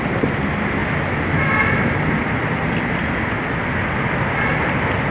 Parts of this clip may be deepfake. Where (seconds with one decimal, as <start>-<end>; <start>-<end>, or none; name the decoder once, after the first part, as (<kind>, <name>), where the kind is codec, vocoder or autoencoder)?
none